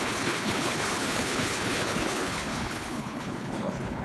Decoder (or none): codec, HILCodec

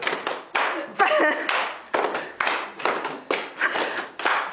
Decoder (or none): none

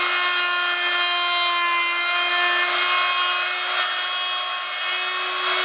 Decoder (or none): none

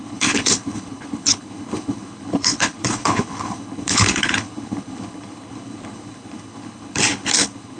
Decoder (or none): codec, HILCodec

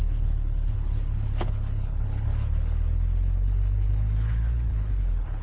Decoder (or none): codec, HILCodec